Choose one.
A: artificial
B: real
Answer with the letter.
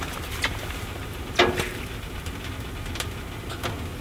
B